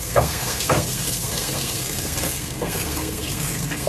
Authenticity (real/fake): fake